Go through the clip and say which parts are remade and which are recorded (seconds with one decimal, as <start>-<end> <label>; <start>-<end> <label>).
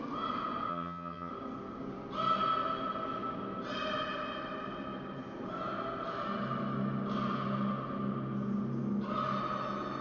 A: 0.0-0.7 recorded; 0.7-1.3 remade; 1.3-10.0 recorded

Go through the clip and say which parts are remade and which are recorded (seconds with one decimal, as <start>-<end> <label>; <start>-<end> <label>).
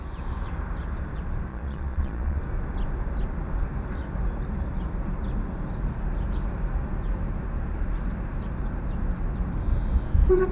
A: 0.0-1.5 recorded; 1.5-2.4 remade; 2.4-10.5 recorded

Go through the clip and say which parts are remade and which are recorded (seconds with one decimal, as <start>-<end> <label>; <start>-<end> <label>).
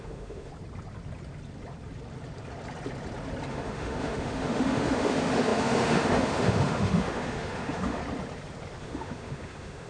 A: 0.0-0.5 remade; 0.5-3.5 recorded; 3.5-8.0 remade; 8.0-8.8 recorded; 8.8-9.9 remade